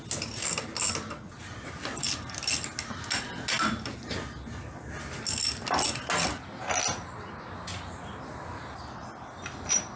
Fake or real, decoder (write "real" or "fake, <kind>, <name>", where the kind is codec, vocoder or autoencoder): real